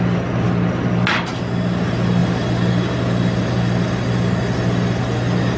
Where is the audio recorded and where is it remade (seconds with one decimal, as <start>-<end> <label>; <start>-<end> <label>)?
0.0-5.6 recorded